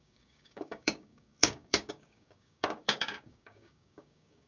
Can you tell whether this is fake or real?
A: fake